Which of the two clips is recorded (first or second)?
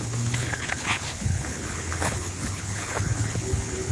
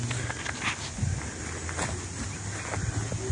second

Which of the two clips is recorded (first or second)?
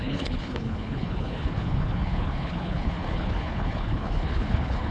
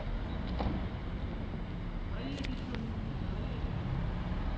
second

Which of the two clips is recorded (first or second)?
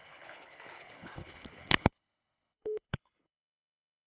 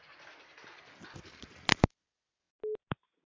second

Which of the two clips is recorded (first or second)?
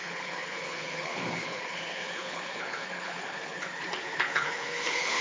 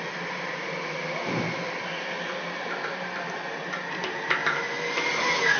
second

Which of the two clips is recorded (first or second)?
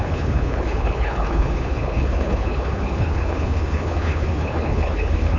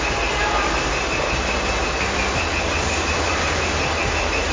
second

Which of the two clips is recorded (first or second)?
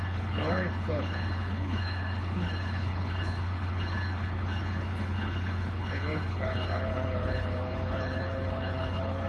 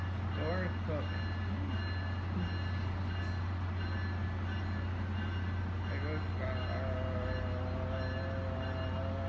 second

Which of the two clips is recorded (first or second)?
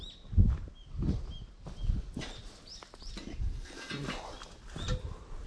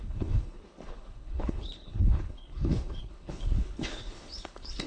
first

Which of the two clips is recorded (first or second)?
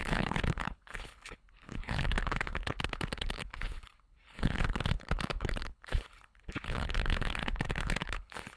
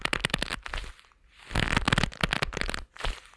second